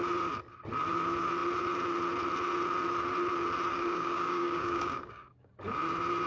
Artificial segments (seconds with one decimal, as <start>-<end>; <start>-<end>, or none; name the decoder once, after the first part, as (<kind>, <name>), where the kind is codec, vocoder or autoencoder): 3.7-5.5 (codec, DAC)